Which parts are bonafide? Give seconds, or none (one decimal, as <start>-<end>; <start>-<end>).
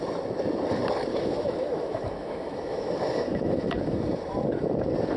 0.0-1.1; 4.2-5.2